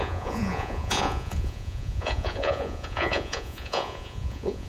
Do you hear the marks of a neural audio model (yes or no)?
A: yes